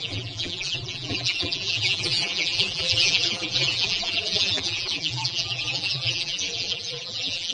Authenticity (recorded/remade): remade